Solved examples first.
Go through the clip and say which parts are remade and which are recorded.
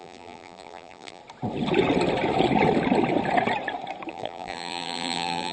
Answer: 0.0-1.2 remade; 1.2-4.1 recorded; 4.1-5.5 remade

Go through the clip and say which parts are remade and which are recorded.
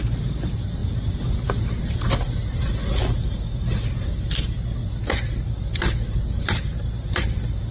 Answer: 0.0-7.7 recorded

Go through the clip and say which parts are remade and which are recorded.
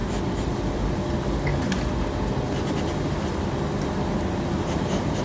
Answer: 0.0-5.2 recorded